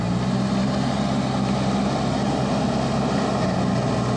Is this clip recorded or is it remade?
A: recorded